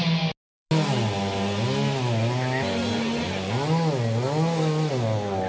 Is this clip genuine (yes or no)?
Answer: yes